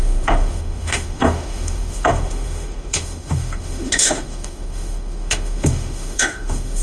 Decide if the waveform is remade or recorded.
remade